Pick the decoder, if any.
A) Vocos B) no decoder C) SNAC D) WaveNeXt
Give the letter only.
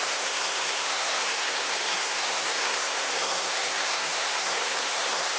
C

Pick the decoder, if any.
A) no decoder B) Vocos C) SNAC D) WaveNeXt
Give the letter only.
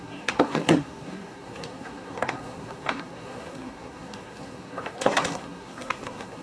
C